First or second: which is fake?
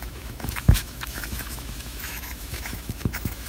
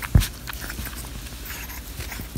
first